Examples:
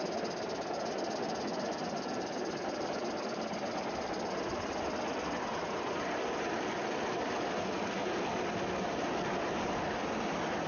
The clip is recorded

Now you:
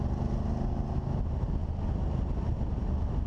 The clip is recorded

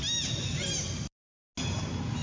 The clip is recorded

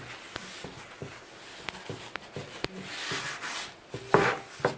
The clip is recorded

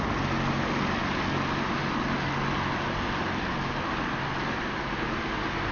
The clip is recorded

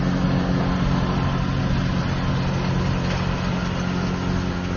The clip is recorded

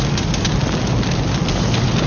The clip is recorded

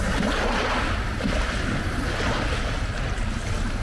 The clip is recorded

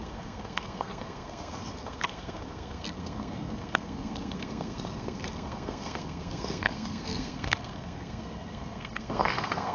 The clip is remade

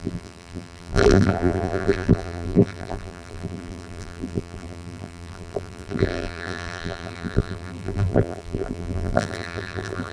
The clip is remade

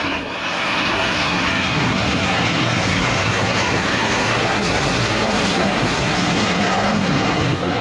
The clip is remade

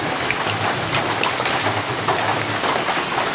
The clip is recorded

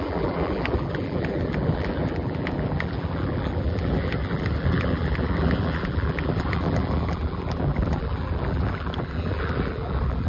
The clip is remade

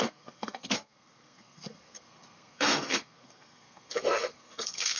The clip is remade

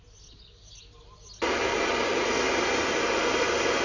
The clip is recorded